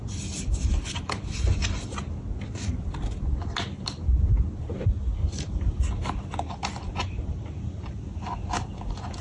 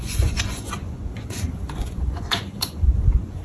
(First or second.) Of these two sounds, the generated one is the second